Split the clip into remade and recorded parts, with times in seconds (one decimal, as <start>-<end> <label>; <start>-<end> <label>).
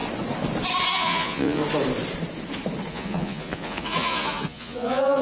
0.0-0.9 recorded; 0.9-1.6 remade; 1.6-2.9 recorded; 2.9-5.2 remade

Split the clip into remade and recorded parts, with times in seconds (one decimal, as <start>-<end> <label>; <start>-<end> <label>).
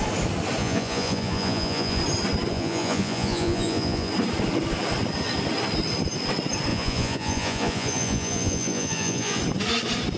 0.0-0.6 recorded; 0.6-2.0 remade; 2.0-2.5 recorded; 2.5-4.1 remade; 4.1-6.7 recorded; 6.7-9.4 remade; 9.4-10.2 recorded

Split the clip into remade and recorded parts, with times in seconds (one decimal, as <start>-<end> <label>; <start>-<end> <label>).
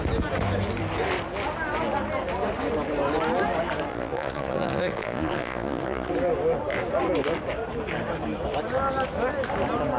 0.0-3.9 recorded; 3.9-6.1 remade; 6.1-10.0 recorded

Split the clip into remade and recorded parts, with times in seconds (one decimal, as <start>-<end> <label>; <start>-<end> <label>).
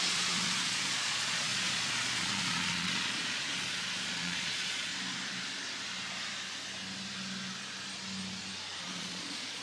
0.0-4.9 remade; 4.9-8.8 recorded; 8.8-9.6 remade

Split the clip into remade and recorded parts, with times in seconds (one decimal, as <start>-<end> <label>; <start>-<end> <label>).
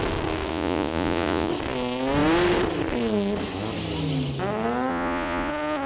0.0-0.5 recorded; 0.5-1.5 remade; 1.5-4.9 recorded; 4.9-5.5 remade; 5.5-5.9 recorded